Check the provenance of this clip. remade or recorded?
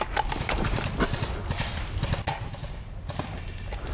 recorded